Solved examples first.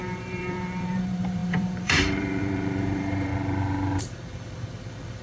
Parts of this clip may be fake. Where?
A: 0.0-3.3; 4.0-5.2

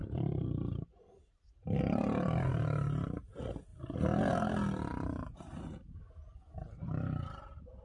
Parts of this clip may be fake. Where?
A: 0.0-1.8; 3.7-4.3; 4.9-7.8

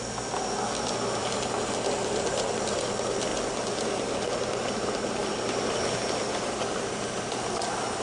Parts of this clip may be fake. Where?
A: none